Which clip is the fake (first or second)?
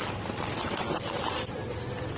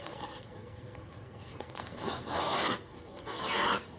second